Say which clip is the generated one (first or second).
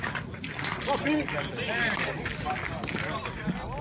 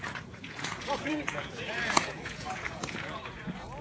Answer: second